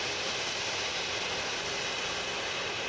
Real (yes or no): yes